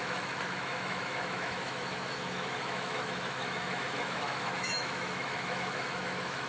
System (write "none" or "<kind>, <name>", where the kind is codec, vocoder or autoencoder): autoencoder, DAC-VAE